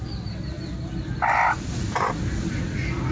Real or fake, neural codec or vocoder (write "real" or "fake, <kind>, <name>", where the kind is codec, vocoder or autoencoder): real